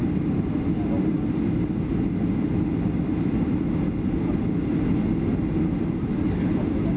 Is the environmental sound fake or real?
real